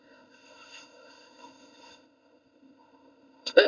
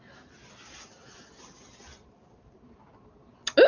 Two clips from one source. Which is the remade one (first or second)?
first